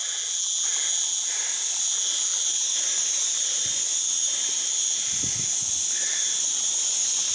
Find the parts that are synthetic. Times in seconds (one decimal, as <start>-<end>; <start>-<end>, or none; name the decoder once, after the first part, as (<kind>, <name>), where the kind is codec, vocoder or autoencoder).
none